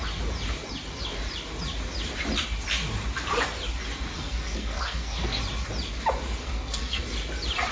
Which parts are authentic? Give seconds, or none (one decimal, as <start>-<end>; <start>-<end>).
0.0-4.1; 5.4-6.4; 7.0-7.7